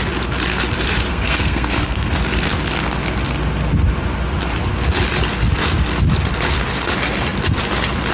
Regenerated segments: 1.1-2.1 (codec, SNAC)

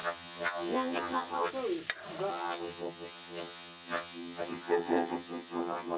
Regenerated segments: 0.0-1.5 (vocoder, HiFi-GAN); 2.3-6.0

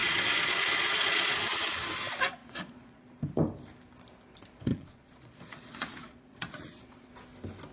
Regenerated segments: 0.0-1.9 (vocoder, Vocos); 2.4-3.0; 4.7-7.1

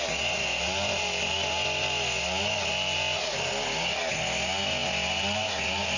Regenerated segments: none

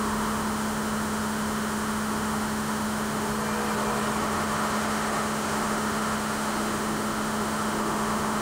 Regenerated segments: 0.0-3.3 (autoencoder, DAC-VAE); 4.2-8.4

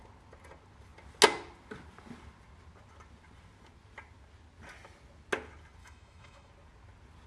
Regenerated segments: 5.8-6.5 (autoencoder, DAC-VAE)

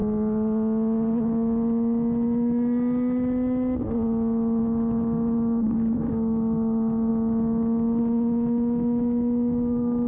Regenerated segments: 4.6-7.1 (autoencoder, DAC-VAE); 8.0-10.1

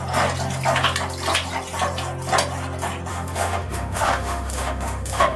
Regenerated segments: 3.1-5.4 (autoencoder, DAC-VAE)